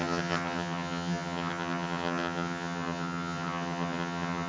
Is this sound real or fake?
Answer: fake